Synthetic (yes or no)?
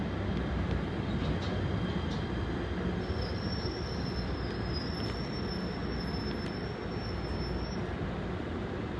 no